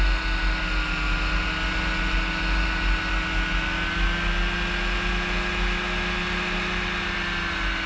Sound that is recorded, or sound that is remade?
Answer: recorded